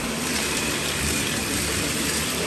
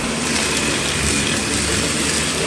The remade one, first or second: first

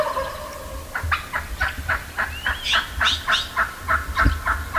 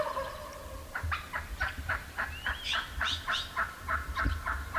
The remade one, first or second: second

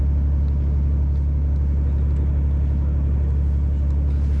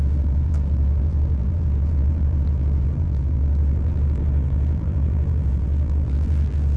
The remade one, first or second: second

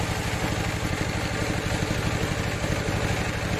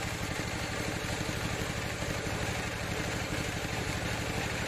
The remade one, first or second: second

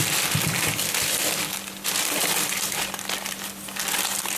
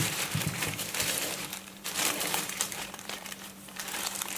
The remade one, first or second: second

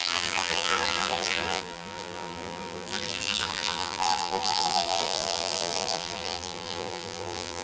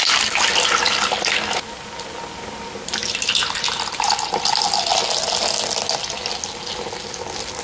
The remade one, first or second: first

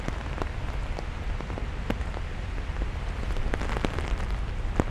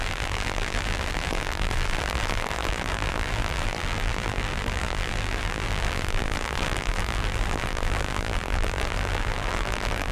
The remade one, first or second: second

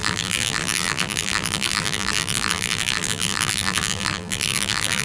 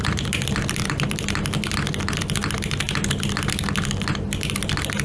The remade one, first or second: first